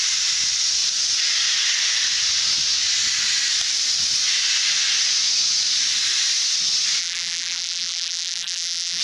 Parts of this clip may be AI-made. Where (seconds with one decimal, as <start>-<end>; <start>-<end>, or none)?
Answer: 7.0-9.0